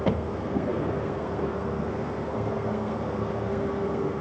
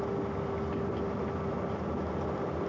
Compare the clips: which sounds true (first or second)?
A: second